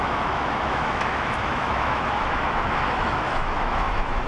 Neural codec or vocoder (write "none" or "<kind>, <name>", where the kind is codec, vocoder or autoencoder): autoencoder, DAC-VAE